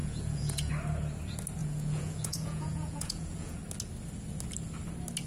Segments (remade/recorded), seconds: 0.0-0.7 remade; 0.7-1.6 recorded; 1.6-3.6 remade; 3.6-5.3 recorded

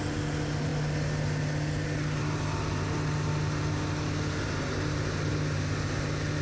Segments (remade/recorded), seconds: 0.0-6.4 recorded

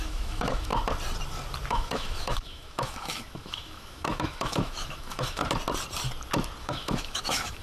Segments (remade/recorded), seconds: 0.0-0.7 remade; 0.7-1.7 recorded; 1.7-5.4 remade; 5.4-6.6 recorded; 6.6-7.6 remade

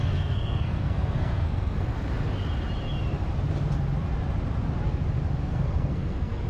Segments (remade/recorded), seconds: 0.0-1.9 remade; 1.9-5.4 recorded; 5.4-6.5 remade

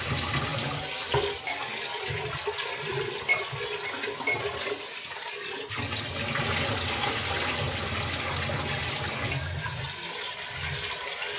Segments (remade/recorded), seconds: 0.0-11.4 recorded